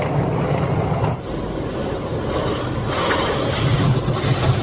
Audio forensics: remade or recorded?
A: recorded